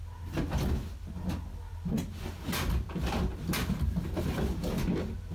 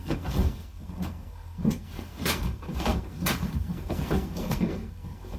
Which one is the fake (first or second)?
second